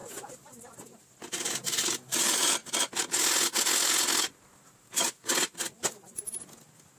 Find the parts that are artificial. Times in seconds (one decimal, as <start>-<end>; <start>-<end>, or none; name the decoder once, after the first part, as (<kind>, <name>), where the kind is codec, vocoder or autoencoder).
1.8-2.6 (vocoder, BigVGAN v2)